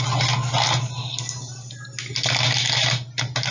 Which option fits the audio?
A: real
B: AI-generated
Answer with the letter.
A